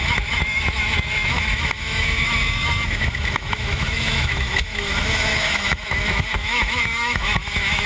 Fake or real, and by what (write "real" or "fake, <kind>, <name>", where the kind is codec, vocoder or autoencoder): fake, autoencoder, DAC-VAE